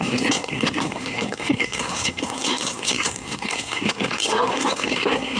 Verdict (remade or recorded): remade